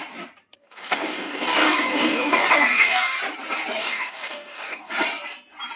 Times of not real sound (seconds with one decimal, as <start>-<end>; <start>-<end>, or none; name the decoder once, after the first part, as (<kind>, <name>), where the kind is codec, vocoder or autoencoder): 0.6-3.2 (codec, DAC); 3.8-4.9